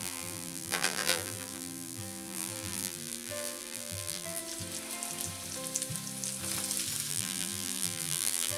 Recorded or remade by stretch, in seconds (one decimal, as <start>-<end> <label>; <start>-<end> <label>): 0.0-4.4 remade; 4.4-7.1 recorded; 7.1-8.6 remade